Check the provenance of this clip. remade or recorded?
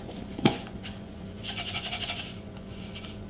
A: remade